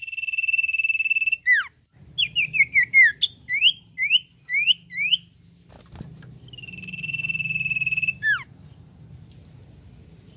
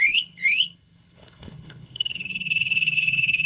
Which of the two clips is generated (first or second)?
second